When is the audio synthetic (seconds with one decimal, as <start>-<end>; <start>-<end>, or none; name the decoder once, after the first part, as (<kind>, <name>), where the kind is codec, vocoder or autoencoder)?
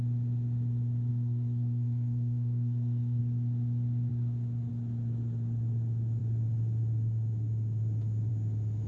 1.1-3.2 (codec, SNAC)